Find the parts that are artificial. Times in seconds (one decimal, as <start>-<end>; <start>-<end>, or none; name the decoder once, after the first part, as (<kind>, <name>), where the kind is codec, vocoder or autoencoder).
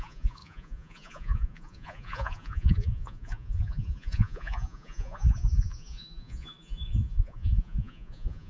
0.0-8.5 (vocoder, Vocos)